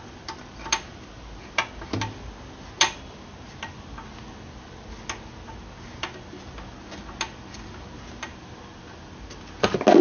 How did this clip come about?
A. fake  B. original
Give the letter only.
B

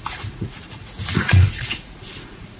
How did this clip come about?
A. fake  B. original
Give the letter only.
A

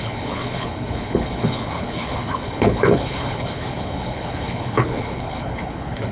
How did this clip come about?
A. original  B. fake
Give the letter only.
B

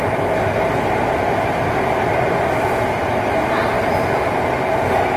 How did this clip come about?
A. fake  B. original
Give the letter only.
B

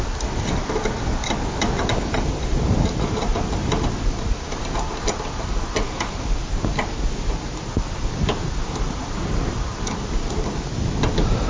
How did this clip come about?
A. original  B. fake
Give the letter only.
A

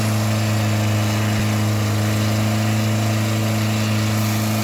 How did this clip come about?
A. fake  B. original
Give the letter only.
B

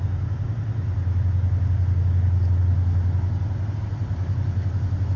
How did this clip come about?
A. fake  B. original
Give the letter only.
B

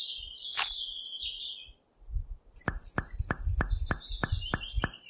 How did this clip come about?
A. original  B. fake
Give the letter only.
A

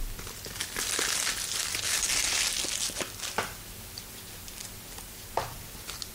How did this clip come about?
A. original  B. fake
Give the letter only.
A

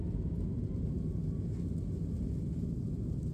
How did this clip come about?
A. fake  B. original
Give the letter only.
B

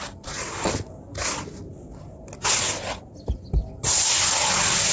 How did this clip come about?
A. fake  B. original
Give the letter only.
B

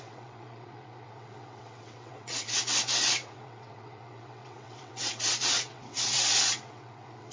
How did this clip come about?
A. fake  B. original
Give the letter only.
A